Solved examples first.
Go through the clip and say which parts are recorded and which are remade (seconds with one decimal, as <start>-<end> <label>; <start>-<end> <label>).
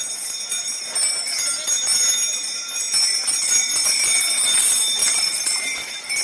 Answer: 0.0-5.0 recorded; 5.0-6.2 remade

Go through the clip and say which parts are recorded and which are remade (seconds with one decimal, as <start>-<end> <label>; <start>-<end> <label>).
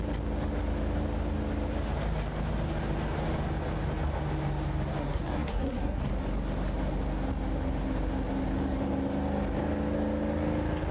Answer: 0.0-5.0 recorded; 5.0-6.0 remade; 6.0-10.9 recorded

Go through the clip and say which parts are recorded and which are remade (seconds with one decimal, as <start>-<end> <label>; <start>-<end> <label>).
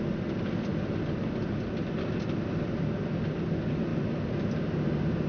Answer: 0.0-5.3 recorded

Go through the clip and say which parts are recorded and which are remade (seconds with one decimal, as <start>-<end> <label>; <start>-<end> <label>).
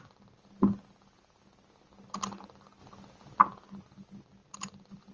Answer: 0.0-5.1 recorded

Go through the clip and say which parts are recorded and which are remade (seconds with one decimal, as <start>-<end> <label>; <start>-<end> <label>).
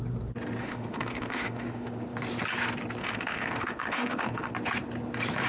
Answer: 0.0-0.6 recorded; 0.6-1.9 remade; 1.9-3.0 recorded; 3.0-4.5 remade; 4.5-5.5 recorded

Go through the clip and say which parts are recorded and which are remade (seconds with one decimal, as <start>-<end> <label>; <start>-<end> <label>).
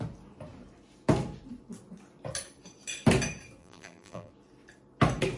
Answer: 0.0-3.6 recorded; 3.6-4.3 remade; 4.3-5.4 recorded